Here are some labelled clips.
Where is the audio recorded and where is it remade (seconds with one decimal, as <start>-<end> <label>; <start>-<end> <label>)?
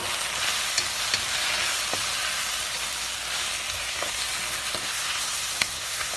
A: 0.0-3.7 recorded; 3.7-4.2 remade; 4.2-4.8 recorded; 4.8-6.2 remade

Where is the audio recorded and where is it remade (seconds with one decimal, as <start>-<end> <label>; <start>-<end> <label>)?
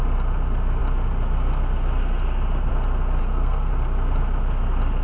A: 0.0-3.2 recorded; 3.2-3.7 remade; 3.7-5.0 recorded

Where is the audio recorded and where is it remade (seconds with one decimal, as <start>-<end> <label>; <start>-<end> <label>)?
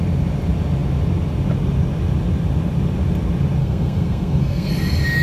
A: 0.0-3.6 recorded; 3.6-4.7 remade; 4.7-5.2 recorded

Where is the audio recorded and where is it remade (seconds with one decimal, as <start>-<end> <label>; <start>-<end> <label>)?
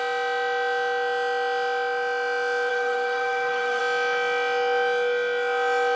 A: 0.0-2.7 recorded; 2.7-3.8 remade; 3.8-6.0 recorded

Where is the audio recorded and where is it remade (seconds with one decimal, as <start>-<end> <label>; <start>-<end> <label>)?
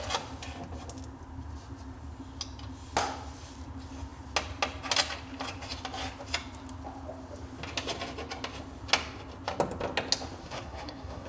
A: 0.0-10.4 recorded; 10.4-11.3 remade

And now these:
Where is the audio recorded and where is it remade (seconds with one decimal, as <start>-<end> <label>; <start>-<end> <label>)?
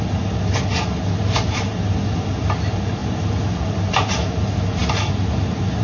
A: 0.0-5.8 recorded